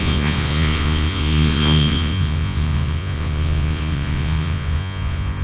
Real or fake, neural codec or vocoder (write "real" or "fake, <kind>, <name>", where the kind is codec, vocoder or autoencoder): fake, vocoder, Vocos